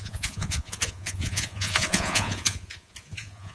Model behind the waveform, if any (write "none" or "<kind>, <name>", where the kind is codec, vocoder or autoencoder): vocoder, Vocos